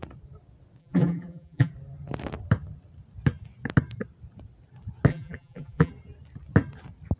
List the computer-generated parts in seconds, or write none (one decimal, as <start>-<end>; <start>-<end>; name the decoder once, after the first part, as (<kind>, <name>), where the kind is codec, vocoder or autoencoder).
0.8-1.7 (vocoder, BigVGAN v2); 5.1-5.9